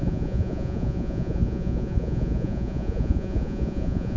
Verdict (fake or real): fake